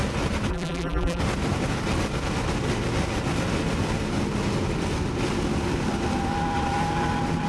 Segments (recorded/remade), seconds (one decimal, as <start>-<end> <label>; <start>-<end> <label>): 0.0-0.5 recorded; 0.5-1.2 remade; 1.2-7.5 recorded